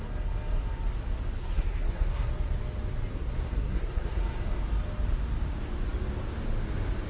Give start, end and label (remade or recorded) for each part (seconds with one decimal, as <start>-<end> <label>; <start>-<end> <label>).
0.0-1.4 recorded; 1.4-2.3 remade; 2.3-3.1 recorded; 3.1-4.2 remade; 4.2-7.1 recorded